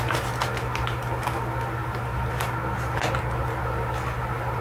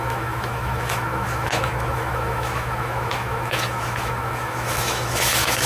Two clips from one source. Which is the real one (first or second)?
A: first